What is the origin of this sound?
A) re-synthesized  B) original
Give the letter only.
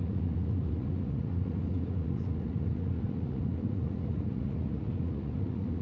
A